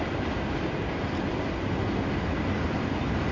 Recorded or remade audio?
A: recorded